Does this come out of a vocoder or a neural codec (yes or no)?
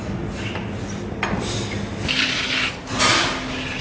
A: no